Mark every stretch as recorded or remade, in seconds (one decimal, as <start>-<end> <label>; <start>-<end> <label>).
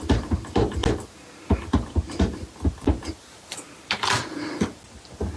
0.0-5.4 recorded